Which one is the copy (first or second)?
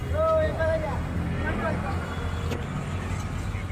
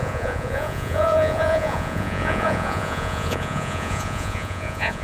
second